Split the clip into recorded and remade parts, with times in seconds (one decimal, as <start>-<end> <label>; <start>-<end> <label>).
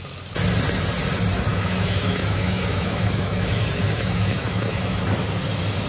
0.0-1.5 recorded; 1.5-5.0 remade; 5.0-5.9 recorded